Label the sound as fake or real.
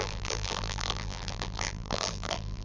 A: fake